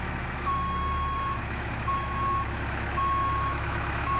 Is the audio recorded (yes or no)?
no